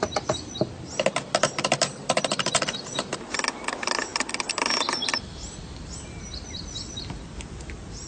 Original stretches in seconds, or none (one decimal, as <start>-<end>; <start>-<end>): 0.0-8.1